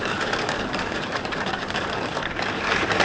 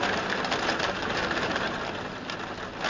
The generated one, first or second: first